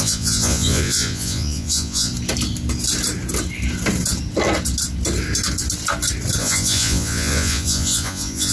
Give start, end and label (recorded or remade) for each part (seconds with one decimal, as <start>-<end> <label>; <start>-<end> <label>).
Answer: 0.0-2.1 remade; 2.1-6.4 recorded; 6.4-8.5 remade